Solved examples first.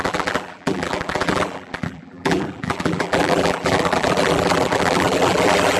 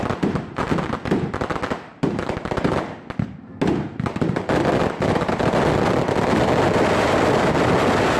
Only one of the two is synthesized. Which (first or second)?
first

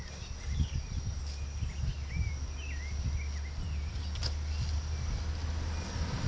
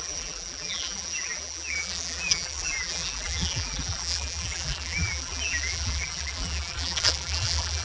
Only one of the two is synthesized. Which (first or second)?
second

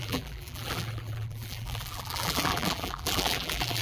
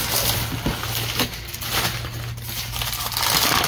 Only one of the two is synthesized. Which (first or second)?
first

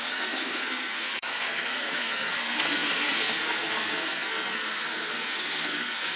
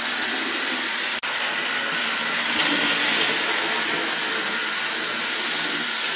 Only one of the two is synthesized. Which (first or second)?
first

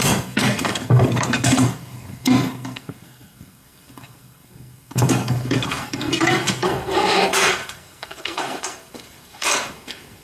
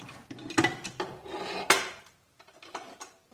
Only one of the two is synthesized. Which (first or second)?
first